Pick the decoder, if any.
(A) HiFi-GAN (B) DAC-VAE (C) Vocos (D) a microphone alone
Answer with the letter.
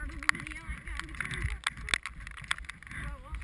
D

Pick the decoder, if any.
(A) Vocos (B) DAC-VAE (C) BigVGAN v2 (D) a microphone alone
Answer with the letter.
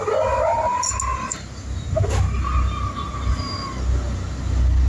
D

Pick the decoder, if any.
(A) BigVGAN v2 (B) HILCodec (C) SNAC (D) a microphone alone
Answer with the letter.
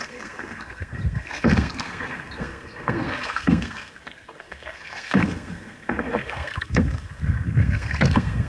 C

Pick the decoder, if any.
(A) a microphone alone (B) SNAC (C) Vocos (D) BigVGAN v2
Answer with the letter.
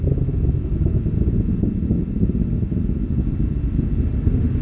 A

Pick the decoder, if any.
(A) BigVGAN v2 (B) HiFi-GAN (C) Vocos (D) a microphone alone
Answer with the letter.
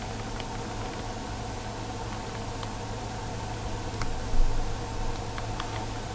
D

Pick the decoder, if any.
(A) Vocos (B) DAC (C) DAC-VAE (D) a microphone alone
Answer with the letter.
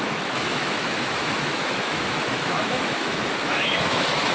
C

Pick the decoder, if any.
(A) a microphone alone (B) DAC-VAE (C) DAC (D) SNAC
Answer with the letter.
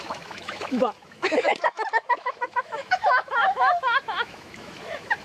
B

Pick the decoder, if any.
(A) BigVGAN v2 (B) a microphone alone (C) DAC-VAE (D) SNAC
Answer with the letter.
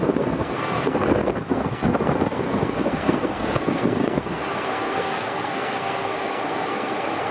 D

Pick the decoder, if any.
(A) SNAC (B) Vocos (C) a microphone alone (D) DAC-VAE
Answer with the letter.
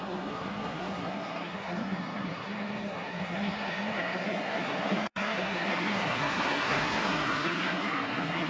A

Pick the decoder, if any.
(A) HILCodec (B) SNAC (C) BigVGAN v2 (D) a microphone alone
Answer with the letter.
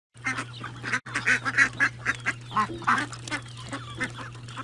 D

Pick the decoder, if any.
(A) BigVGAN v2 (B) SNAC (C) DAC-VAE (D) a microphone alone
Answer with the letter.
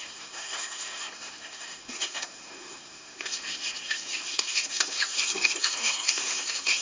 B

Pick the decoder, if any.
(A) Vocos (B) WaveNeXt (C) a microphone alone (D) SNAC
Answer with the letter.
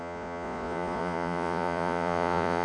A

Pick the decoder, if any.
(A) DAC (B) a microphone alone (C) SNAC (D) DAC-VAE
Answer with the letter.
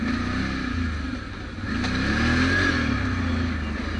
B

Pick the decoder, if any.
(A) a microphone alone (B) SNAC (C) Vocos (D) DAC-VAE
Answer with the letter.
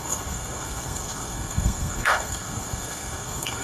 B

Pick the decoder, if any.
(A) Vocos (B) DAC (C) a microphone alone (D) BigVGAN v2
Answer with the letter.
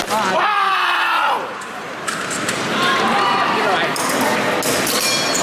C